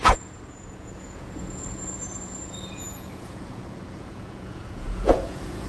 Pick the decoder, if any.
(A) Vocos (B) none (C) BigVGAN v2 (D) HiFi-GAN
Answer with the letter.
A